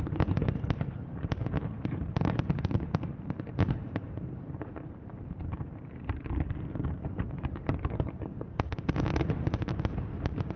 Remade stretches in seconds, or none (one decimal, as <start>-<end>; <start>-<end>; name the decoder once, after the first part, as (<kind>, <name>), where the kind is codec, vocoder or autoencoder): 0.0-5.1 (vocoder, BigVGAN v2); 5.6-10.6